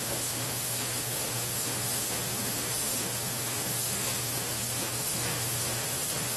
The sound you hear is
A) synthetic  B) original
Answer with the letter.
A